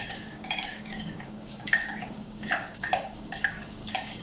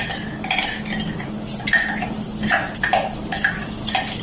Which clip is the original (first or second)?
second